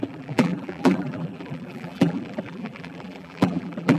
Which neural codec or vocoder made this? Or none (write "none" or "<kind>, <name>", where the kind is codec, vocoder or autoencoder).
vocoder, BigVGAN v2